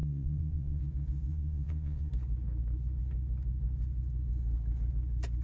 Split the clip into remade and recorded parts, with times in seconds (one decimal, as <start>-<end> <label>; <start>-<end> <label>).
0.0-0.8 remade; 0.8-1.3 recorded; 1.3-2.1 remade; 2.1-5.4 recorded